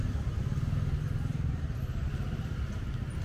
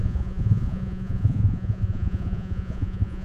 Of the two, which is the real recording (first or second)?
first